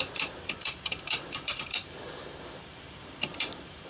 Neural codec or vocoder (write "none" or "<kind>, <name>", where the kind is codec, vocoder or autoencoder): vocoder, BigVGAN v2